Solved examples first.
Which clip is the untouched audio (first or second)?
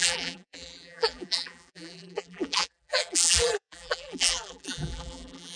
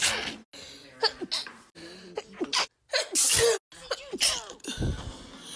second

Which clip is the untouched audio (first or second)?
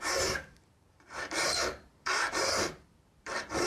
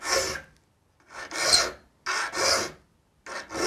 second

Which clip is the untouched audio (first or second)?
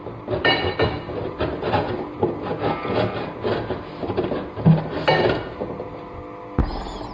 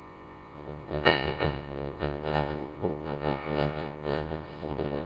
first